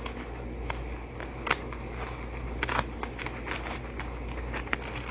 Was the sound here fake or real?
real